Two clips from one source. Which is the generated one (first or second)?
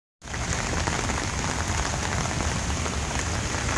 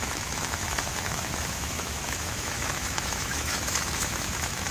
second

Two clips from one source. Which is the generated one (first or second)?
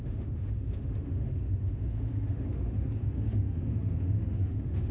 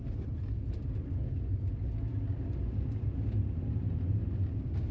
first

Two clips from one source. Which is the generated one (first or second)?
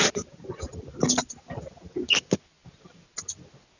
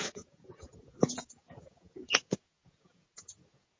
second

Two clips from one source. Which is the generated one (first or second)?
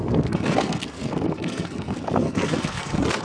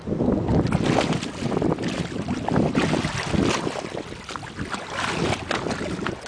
first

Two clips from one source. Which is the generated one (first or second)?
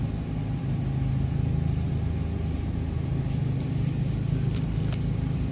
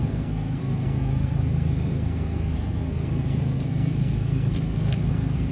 second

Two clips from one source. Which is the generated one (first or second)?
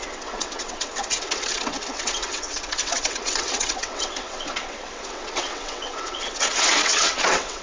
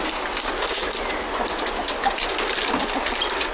first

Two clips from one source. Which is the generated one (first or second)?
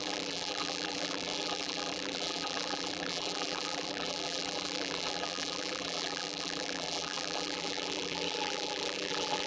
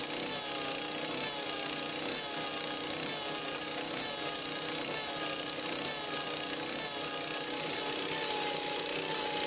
first